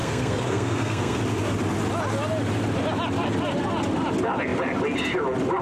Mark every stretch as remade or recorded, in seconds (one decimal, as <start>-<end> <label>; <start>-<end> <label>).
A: 0.0-1.2 remade; 1.2-5.6 recorded